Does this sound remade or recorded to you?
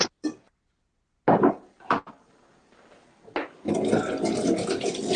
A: recorded